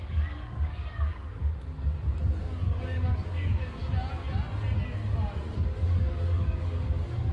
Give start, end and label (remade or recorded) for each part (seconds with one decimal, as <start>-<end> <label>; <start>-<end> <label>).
0.0-1.4 remade; 1.4-2.4 recorded; 2.4-3.8 remade; 3.8-5.8 recorded; 5.8-7.3 remade